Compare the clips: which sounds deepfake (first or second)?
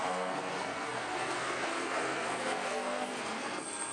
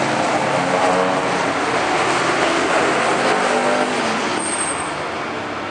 first